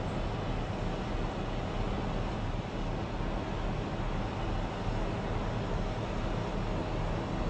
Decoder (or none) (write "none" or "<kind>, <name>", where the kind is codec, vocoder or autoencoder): none